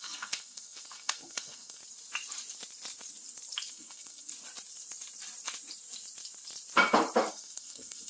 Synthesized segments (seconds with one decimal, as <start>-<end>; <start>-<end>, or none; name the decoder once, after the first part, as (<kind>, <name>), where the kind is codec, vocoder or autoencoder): 0.0-1.8 (codec, SNAC); 3.7-4.3; 7.3-8.1